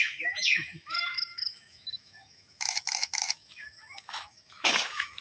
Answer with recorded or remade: remade